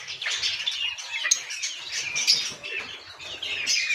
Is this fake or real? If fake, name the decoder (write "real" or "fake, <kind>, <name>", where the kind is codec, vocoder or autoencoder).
real